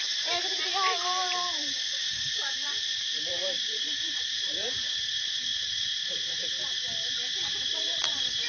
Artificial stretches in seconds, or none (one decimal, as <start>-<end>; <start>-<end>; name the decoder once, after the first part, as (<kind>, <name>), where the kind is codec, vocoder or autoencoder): 0.0-8.5 (vocoder, BigVGAN v2)